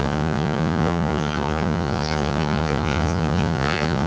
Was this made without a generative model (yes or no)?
no